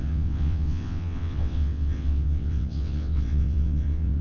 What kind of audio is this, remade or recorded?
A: remade